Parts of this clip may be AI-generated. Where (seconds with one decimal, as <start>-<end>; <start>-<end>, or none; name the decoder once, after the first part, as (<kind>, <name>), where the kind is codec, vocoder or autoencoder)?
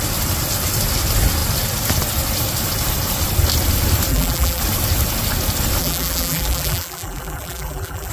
4.1-4.6 (vocoder, BigVGAN v2); 5.8-8.1